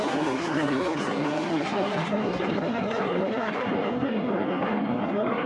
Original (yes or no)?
no